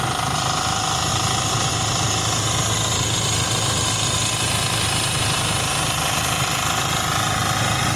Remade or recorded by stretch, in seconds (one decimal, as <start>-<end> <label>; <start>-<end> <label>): 0.0-1.1 recorded; 1.1-1.7 remade; 1.7-8.0 recorded